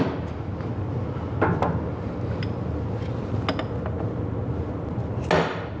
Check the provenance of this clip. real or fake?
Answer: real